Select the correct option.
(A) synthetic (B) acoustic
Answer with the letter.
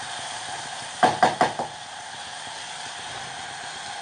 B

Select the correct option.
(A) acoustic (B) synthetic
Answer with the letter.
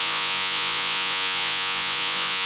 B